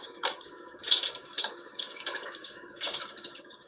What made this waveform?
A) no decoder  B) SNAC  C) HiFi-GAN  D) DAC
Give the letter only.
D